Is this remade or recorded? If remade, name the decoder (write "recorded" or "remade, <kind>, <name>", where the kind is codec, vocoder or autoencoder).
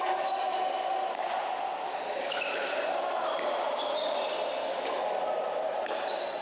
recorded